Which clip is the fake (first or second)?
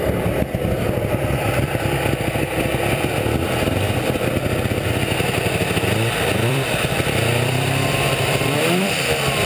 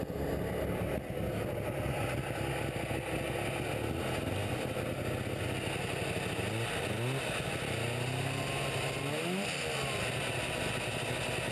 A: first